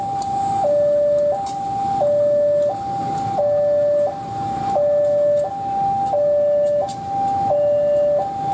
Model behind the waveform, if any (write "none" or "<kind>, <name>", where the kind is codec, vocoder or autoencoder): none